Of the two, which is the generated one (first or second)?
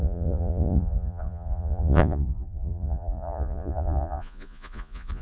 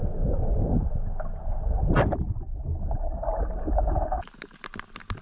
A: first